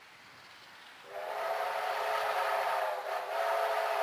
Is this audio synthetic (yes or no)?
no